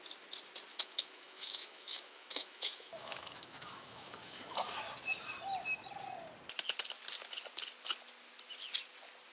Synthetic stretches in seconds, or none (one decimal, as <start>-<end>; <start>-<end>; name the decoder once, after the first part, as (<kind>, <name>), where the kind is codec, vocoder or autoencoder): 0.7-4.8 (autoencoder, DAC-VAE)